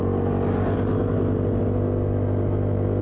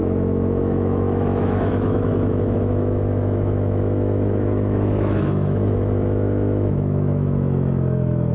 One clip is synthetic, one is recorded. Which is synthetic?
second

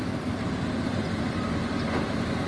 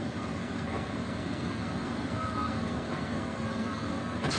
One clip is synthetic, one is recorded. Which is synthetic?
second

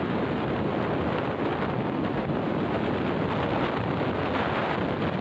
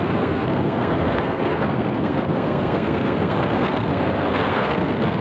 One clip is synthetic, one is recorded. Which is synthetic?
second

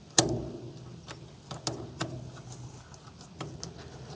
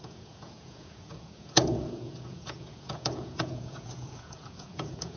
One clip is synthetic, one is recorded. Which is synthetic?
second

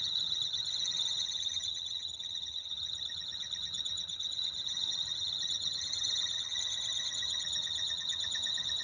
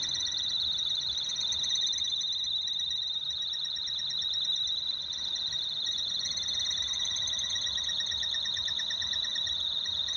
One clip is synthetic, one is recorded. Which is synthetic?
first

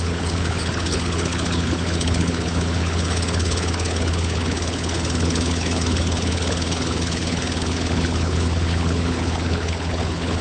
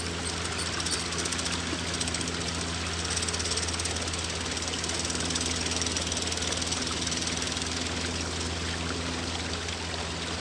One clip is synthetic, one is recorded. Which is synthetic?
first